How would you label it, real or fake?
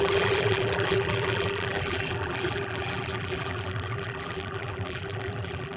fake